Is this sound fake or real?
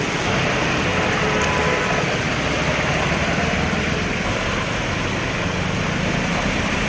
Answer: real